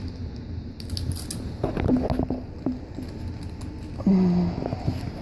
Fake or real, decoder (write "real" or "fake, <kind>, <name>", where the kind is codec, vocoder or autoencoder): real